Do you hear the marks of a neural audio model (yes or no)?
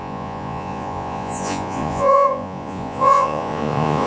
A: yes